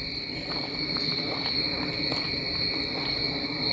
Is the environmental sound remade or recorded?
recorded